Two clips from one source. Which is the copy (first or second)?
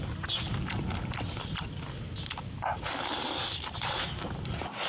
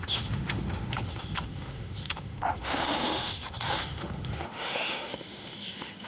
second